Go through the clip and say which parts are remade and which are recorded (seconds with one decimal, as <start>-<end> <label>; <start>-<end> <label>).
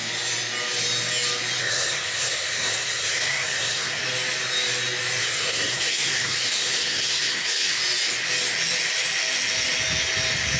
0.0-1.6 recorded; 1.6-4.0 remade; 4.0-5.2 recorded; 5.2-7.8 remade; 7.8-10.6 recorded